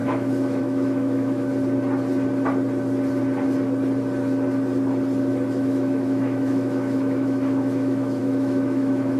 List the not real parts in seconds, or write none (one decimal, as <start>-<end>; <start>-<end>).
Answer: 0.0-1.5; 5.5-9.2